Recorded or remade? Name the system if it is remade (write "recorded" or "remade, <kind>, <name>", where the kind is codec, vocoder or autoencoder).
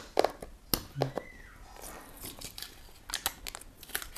recorded